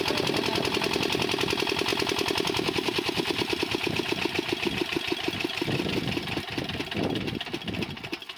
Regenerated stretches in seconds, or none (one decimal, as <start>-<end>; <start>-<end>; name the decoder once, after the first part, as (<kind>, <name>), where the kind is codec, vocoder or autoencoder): none